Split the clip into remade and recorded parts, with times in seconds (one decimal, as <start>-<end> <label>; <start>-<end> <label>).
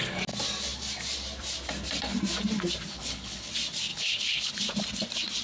0.0-2.9 recorded; 2.9-3.5 remade; 3.5-3.9 recorded; 3.9-4.5 remade; 4.5-5.4 recorded